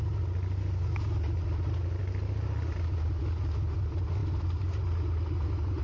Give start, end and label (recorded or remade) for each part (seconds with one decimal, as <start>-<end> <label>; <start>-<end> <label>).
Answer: 0.0-5.8 recorded